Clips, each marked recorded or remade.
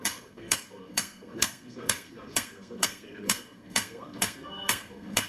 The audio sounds remade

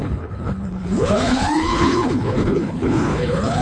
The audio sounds remade